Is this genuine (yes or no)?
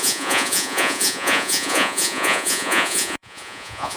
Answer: no